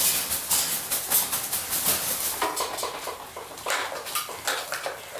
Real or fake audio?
real